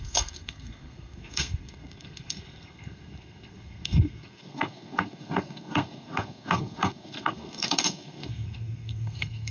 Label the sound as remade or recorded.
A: remade